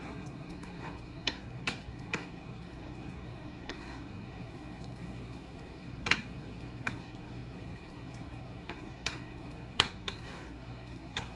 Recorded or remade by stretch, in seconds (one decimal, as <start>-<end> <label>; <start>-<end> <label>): 0.0-11.4 remade